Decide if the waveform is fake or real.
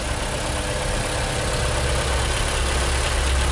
real